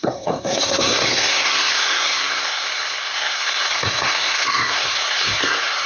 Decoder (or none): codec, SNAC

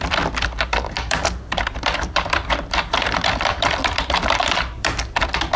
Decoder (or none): vocoder, BigVGAN v2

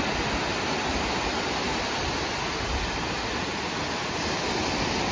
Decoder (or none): none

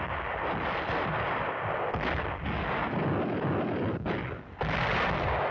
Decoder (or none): none